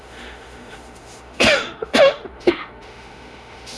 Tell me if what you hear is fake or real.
fake